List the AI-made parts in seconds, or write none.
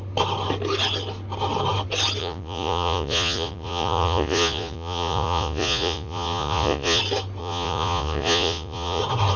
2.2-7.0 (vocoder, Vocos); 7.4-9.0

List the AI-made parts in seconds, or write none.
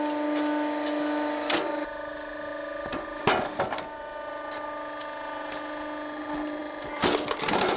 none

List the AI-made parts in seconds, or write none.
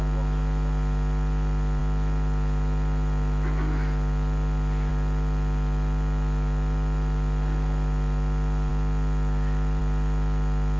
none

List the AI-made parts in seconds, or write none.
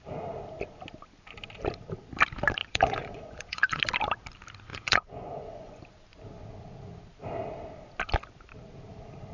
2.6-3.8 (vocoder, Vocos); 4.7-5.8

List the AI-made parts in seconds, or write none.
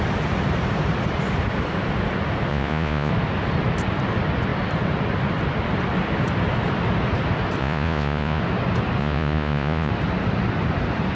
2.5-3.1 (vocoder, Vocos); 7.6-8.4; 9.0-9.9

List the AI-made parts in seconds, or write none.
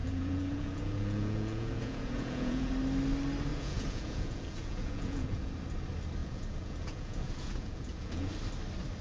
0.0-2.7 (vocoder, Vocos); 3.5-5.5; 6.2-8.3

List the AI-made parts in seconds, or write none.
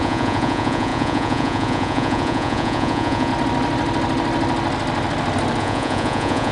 0.0-3.3 (vocoder, Vocos); 5.6-6.5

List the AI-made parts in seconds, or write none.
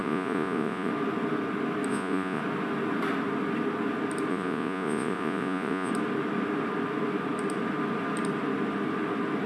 0.0-0.9 (vocoder, Vocos); 1.9-2.4; 4.3-5.9